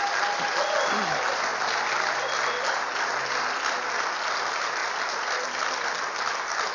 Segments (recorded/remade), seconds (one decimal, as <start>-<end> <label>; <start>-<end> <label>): 0.0-6.7 recorded